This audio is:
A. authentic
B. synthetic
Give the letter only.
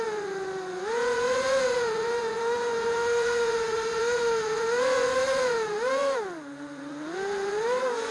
B